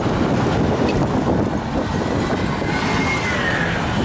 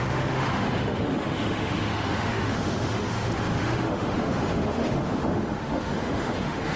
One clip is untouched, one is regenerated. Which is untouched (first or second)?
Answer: first